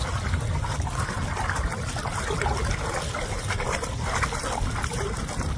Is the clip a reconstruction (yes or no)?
no